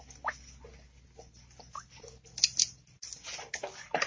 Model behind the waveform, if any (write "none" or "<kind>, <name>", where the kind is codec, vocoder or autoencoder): none